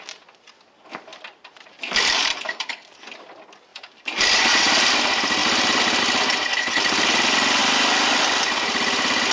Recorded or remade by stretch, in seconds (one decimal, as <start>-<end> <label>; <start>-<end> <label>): 0.0-1.1 recorded; 1.1-2.7 remade; 2.7-3.7 recorded; 3.7-4.6 remade; 4.6-5.4 recorded; 5.4-6.0 remade; 6.0-9.3 recorded